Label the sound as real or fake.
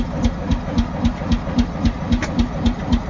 real